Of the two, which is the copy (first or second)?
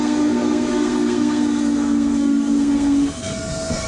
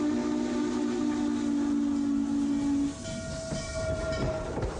first